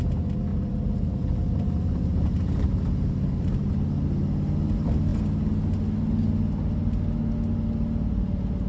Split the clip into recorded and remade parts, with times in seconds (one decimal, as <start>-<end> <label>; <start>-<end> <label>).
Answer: 0.0-0.5 recorded; 0.5-3.7 remade; 3.7-8.7 recorded